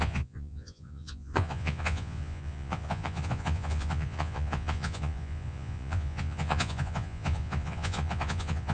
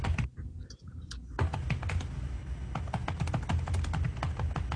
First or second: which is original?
second